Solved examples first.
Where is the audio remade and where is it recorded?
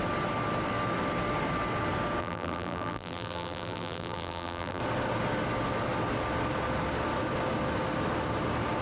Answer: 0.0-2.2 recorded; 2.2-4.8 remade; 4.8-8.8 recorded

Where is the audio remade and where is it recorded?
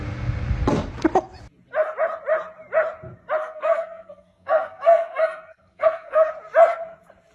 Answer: 0.0-3.4 recorded; 3.4-6.3 remade; 6.3-7.3 recorded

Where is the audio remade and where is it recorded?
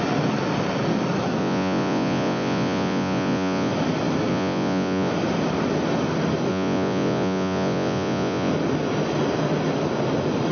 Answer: 0.0-1.4 recorded; 1.4-3.7 remade; 3.7-4.3 recorded; 4.3-5.1 remade; 5.1-6.5 recorded; 6.5-8.5 remade; 8.5-10.5 recorded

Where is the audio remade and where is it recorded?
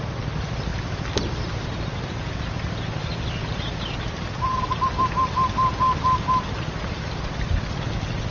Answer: 0.0-8.3 recorded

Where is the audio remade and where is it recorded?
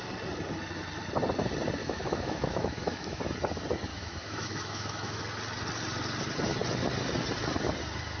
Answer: 0.0-1.8 recorded; 1.8-3.2 remade; 3.2-3.9 recorded; 3.9-5.2 remade; 5.2-8.2 recorded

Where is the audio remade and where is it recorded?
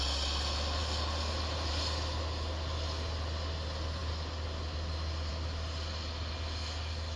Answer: 0.0-7.2 recorded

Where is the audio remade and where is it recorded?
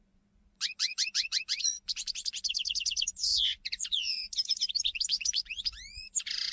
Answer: 0.0-6.5 remade